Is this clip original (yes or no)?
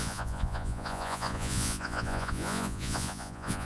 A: no